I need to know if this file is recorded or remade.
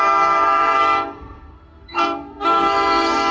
remade